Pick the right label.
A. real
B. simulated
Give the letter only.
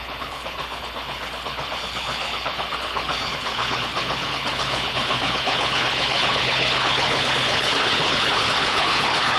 B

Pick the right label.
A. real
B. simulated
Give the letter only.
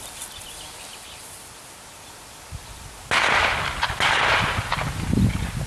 A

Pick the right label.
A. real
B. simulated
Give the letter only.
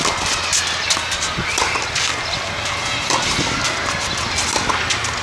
A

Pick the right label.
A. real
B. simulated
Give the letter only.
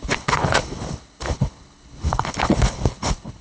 B